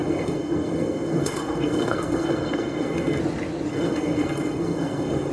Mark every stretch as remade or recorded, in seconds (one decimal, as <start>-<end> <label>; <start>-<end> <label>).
0.0-3.2 remade; 3.2-3.7 recorded; 3.7-5.3 remade